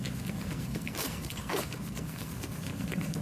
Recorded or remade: remade